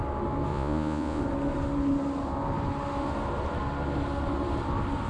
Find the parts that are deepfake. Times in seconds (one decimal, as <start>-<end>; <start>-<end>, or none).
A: 0.5-1.2